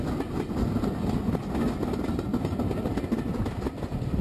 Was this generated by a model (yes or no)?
no